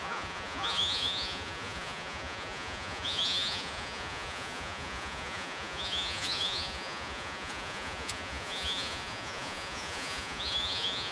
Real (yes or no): no